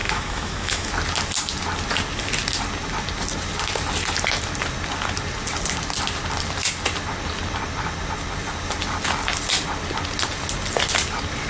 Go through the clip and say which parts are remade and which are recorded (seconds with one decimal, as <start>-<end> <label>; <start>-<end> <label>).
0.0-0.9 remade; 0.9-11.5 recorded